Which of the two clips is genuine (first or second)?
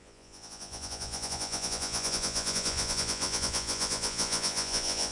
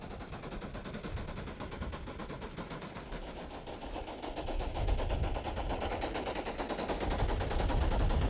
second